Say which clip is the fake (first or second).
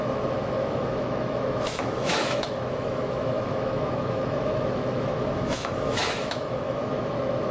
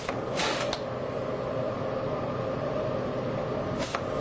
first